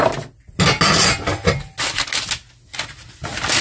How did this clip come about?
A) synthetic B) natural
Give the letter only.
B